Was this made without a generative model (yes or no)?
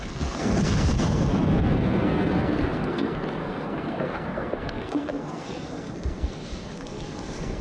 no